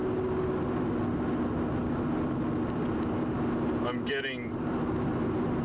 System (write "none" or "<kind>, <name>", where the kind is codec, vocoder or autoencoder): none